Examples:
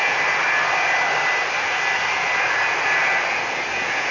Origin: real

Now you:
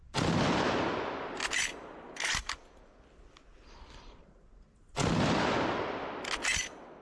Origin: real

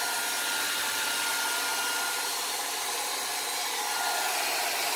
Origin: real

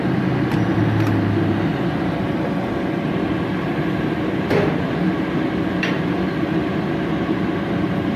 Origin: fake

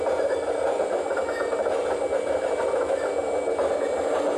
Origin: real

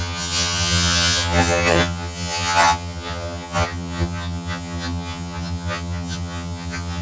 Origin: fake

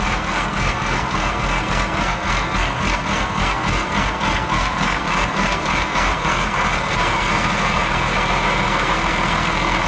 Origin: fake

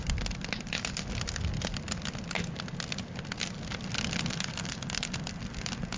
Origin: real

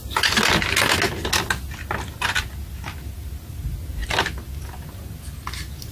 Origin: real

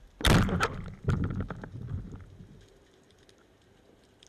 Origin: real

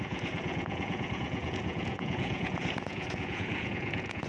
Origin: fake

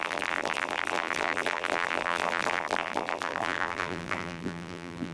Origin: fake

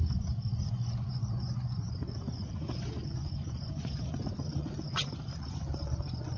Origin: fake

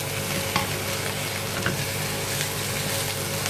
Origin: real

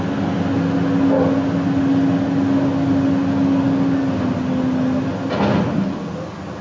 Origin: real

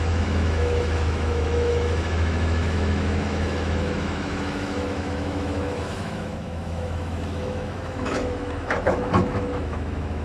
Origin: fake